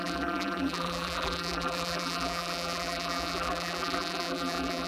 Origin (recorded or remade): remade